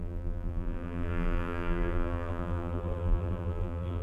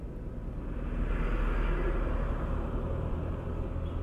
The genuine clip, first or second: second